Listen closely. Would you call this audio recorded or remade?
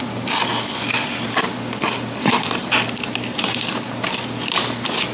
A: recorded